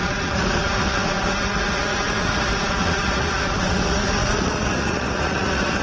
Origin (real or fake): fake